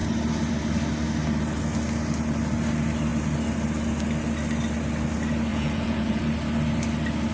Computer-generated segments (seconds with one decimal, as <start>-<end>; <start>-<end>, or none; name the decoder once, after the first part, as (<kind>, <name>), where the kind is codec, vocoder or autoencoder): 5.5-6.2 (vocoder, Vocos)